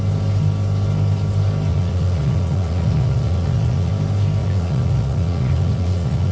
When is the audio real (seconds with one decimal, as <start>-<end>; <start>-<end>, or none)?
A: 0.0-1.7; 3.9-4.4